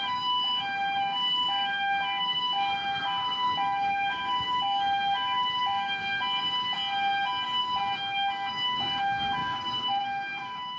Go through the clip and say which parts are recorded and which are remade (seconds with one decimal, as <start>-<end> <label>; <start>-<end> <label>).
0.0-6.0 remade; 6.0-7.6 recorded; 7.6-10.8 remade